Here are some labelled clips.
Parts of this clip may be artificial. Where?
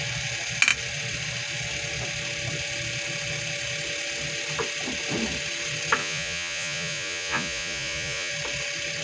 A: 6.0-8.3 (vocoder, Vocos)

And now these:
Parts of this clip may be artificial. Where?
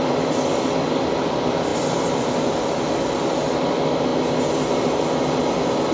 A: none